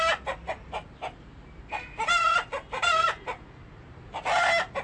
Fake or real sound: real